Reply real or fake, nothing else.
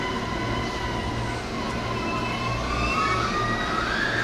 real